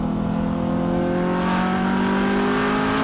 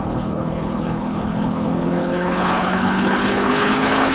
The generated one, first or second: second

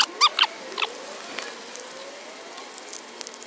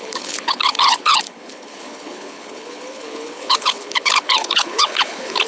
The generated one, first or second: second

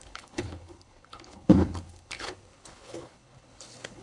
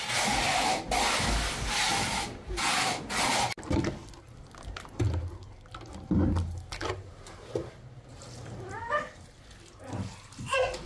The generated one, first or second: first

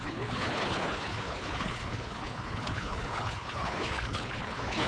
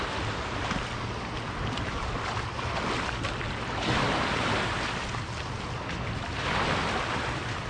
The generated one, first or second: first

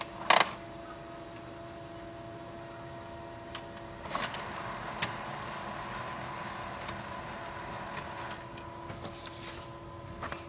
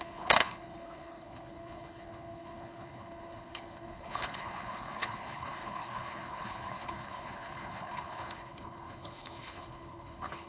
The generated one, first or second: second